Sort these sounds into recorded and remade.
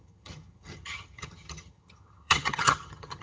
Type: remade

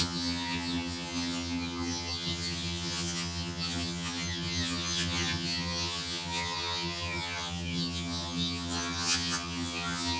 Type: remade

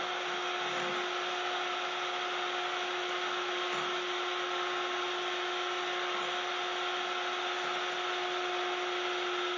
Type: recorded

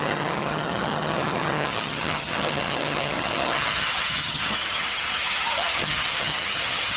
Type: remade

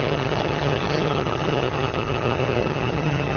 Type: remade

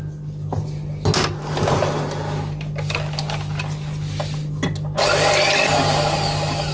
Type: recorded